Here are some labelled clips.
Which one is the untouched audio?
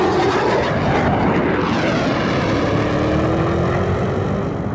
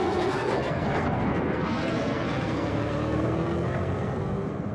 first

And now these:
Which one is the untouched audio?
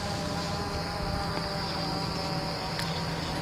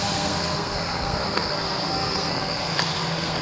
first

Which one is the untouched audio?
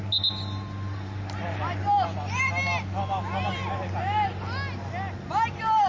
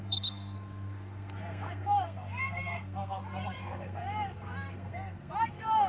first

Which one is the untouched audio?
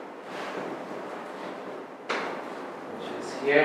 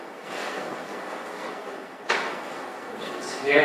first